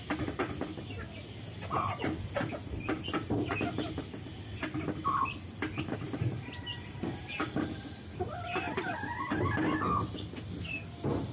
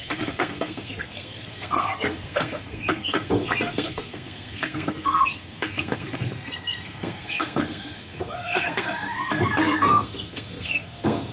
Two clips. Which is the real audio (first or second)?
first